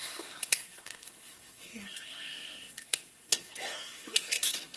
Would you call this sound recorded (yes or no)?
no